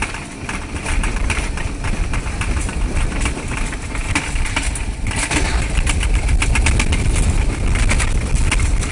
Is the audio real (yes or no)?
no